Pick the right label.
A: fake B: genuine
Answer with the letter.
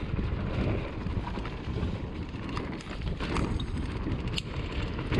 B